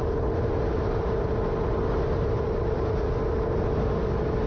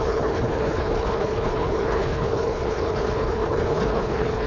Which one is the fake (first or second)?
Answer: second